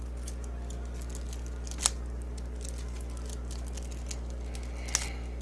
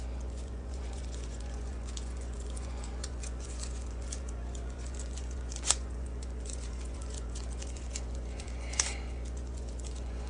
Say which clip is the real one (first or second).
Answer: first